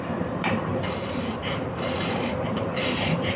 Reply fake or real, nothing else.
fake